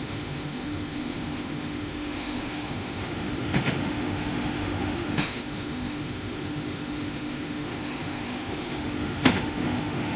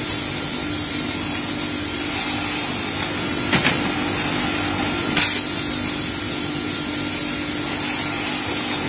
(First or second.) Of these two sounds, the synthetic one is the first